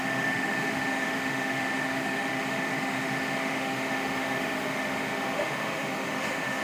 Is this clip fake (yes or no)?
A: yes